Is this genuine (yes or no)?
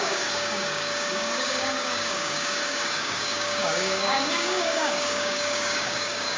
no